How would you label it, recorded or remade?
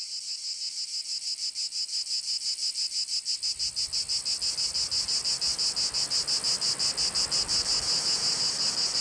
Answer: recorded